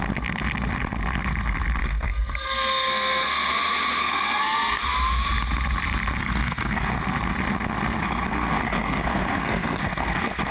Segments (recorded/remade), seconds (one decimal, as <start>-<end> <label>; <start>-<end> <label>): 0.0-1.8 recorded; 1.8-3.5 remade; 3.5-4.0 recorded; 4.0-4.8 remade; 4.8-6.2 recorded; 6.2-7.0 remade; 7.0-8.0 recorded; 8.0-10.5 remade